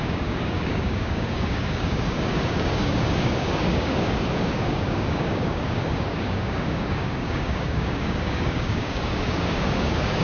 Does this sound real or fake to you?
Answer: fake